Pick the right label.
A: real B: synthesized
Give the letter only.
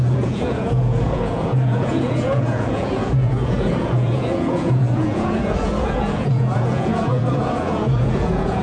B